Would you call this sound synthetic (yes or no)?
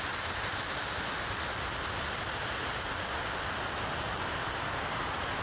no